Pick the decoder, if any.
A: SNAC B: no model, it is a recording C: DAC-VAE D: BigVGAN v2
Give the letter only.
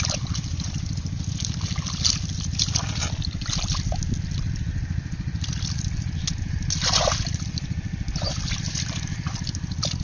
B